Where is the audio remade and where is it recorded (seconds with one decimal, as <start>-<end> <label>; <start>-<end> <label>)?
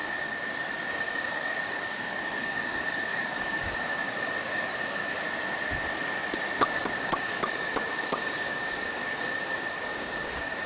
0.0-0.9 recorded; 0.9-5.0 remade; 5.0-6.7 recorded; 6.7-10.7 remade